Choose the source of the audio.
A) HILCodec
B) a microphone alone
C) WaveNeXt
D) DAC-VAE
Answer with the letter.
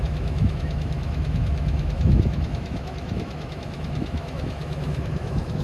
D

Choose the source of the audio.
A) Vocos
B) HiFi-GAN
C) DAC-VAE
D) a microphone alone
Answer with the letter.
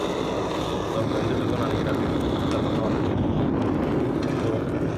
D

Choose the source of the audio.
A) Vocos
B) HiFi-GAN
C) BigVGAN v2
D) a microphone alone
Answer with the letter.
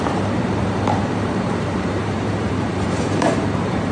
C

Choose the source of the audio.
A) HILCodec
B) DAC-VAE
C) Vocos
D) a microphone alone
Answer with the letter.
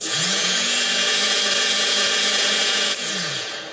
C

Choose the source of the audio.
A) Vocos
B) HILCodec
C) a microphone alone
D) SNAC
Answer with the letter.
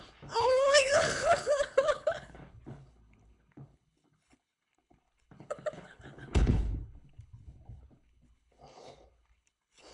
B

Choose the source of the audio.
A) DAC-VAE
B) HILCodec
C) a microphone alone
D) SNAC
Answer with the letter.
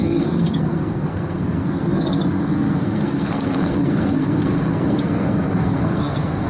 D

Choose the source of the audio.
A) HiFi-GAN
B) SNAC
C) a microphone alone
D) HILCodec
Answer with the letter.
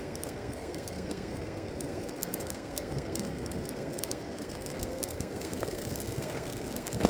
B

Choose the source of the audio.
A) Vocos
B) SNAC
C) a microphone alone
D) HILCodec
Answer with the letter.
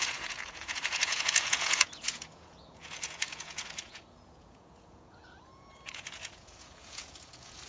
A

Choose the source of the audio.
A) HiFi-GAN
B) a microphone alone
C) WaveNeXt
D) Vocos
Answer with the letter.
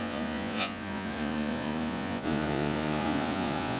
D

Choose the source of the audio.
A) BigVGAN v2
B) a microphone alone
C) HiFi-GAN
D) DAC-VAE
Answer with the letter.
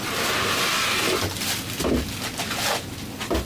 B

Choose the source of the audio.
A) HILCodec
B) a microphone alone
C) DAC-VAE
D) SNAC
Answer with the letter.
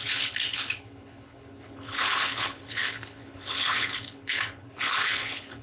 A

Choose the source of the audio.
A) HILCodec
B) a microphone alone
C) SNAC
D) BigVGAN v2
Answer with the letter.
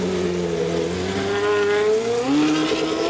B